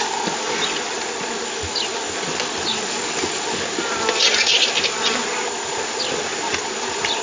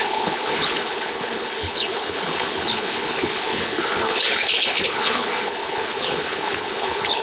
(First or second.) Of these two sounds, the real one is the first